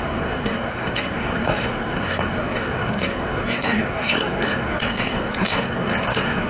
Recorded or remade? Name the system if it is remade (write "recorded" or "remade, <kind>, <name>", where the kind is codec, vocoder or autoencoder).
remade, codec, SNAC